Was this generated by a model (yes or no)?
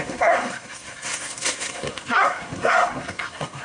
yes